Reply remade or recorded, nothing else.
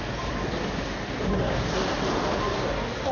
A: recorded